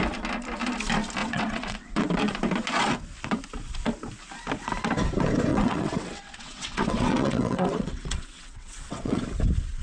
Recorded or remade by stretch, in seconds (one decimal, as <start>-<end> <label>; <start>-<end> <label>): 0.0-1.2 recorded; 1.2-2.2 remade; 2.2-5.5 recorded; 5.5-9.2 remade; 9.2-9.8 recorded